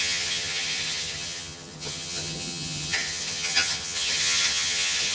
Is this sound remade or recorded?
remade